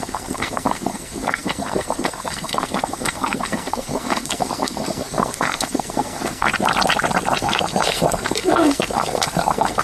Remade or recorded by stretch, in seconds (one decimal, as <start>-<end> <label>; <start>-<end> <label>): 0.0-6.5 remade; 6.5-7.4 recorded; 7.4-9.8 remade